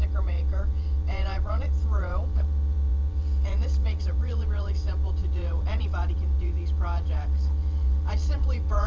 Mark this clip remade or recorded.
remade